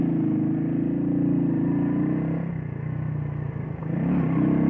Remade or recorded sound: recorded